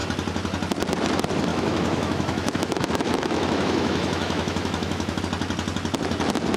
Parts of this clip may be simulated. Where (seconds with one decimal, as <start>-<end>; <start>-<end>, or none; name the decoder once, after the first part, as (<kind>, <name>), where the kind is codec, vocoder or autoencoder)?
1.5-5.2 (autoencoder, DAC-VAE)